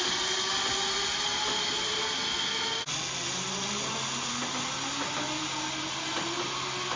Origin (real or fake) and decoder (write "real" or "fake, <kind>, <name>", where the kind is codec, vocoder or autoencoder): real